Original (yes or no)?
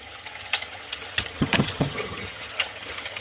no